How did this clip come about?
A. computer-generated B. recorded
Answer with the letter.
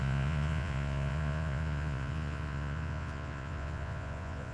A